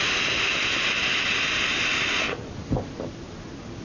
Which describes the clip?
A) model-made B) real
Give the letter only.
B